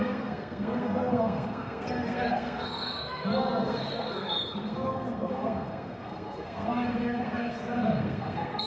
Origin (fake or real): fake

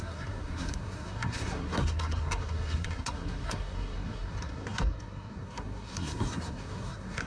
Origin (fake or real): fake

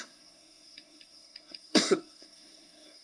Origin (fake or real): fake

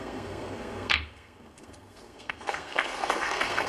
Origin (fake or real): fake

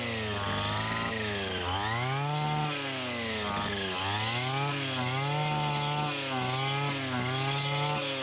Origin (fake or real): real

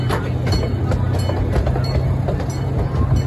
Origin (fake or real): real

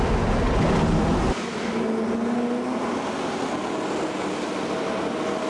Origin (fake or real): real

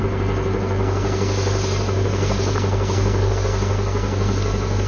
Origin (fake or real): fake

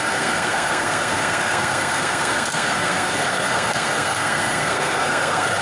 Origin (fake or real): fake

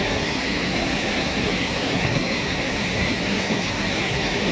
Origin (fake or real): fake